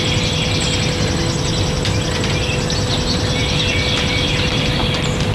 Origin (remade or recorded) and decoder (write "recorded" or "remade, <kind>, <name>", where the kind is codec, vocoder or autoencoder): recorded